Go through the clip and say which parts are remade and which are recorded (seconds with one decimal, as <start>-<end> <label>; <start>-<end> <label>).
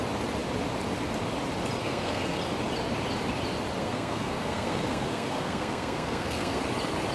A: 0.0-1.8 recorded; 1.8-2.4 remade; 2.4-3.8 recorded; 3.8-6.6 remade; 6.6-7.1 recorded